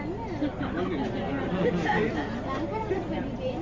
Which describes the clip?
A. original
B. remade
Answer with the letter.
A